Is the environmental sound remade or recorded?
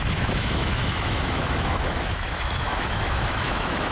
remade